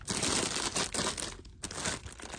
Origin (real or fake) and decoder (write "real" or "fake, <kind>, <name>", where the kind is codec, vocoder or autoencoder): real